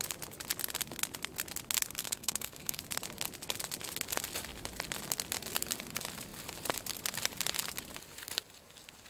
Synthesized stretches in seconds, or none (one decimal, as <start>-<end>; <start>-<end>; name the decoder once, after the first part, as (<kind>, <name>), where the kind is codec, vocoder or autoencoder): 2.0-2.8 (codec, SNAC)